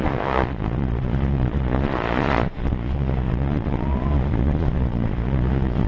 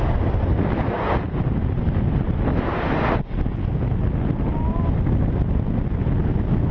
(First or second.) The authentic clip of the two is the second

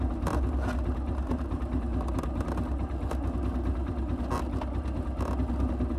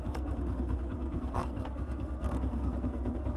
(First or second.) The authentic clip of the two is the first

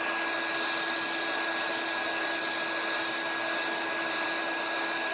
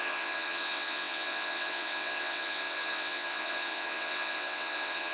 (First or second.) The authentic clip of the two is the first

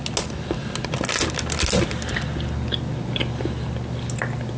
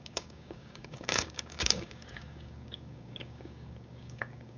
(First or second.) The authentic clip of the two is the first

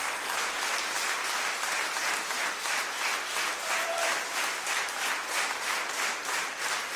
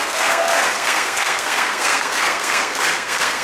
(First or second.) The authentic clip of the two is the first